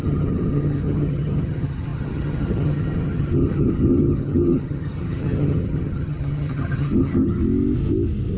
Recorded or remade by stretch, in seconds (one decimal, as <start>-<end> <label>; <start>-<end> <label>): 0.0-7.4 remade; 7.4-8.4 recorded

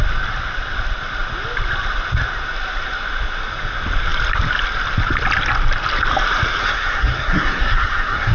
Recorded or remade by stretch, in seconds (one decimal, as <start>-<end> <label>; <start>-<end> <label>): 0.0-6.6 recorded; 6.6-8.3 remade

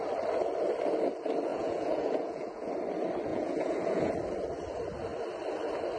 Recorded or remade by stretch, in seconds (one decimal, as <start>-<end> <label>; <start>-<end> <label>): 0.0-1.5 recorded; 1.5-2.7 remade; 2.7-3.3 recorded; 3.3-4.1 remade; 4.1-6.0 recorded

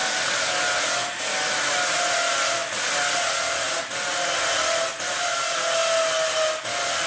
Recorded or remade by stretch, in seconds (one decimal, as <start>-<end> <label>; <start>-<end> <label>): 0.0-7.1 recorded

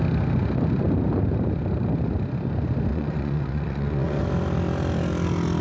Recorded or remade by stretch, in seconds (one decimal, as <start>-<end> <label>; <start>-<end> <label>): 0.0-2.9 recorded; 2.9-4.2 remade; 4.2-5.6 recorded